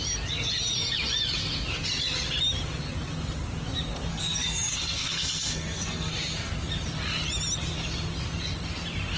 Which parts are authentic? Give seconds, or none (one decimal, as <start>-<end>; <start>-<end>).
0.0-4.1; 6.5-9.2